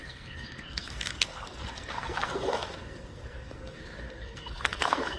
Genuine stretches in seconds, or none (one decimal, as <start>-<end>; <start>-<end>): none